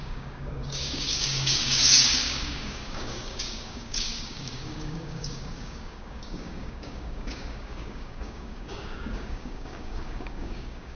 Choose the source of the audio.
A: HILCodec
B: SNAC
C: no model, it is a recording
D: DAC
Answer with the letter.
D